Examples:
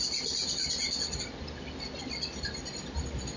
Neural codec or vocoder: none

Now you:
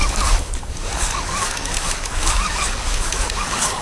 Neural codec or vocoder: codec, DAC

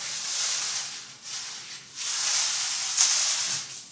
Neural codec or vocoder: none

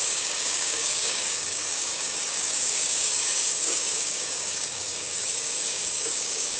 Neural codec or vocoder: codec, DAC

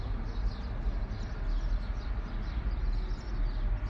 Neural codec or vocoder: none